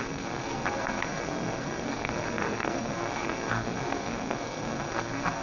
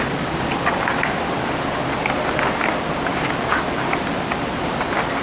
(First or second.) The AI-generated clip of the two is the first